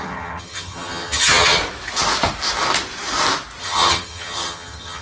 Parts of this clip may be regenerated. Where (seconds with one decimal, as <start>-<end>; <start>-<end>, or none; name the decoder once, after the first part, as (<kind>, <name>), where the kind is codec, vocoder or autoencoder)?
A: 0.0-1.6 (vocoder, HiFi-GAN); 3.6-5.0

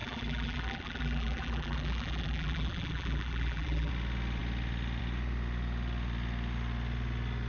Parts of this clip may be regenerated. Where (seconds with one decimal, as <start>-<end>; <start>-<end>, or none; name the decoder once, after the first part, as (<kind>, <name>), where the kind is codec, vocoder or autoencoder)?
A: 0.0-3.9 (vocoder, BigVGAN v2)